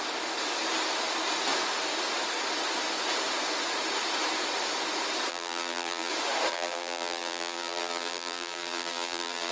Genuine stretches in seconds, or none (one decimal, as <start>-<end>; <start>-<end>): 0.0-5.3; 6.1-6.5